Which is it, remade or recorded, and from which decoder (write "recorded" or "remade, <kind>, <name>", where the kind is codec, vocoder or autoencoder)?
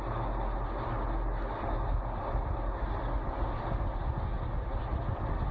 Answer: recorded